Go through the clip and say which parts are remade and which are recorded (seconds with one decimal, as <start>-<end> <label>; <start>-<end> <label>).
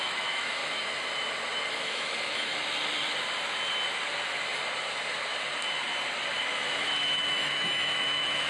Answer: 0.0-0.6 remade; 0.6-1.7 recorded; 1.7-2.5 remade; 2.5-6.4 recorded; 6.4-8.5 remade